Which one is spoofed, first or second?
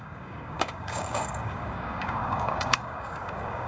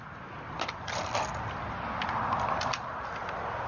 first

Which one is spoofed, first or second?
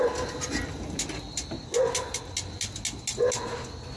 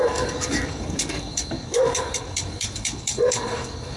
second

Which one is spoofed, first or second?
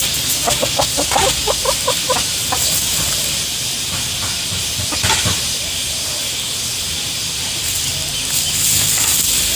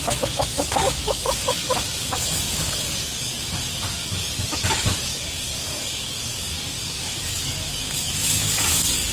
second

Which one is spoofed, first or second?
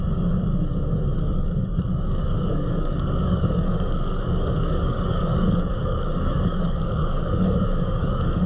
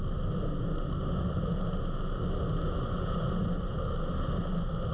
first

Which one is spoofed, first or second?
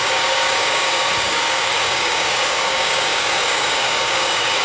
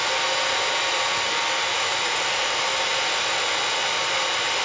first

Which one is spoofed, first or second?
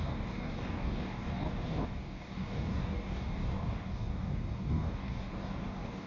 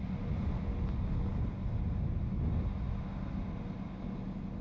first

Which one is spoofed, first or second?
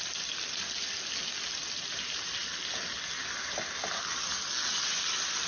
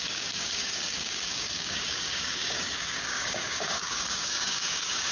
second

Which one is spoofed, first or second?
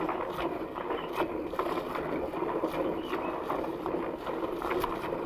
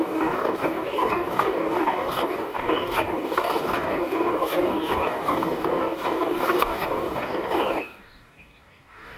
second